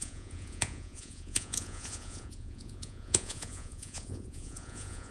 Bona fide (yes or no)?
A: no